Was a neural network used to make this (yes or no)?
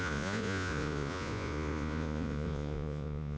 yes